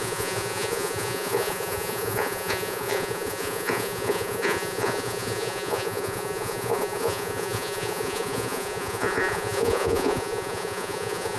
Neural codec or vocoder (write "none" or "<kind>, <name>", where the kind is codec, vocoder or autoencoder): vocoder, Vocos